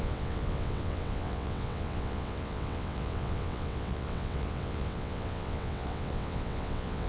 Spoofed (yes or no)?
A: yes